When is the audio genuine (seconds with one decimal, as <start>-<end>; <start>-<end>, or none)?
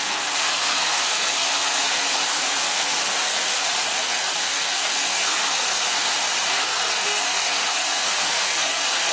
5.8-6.5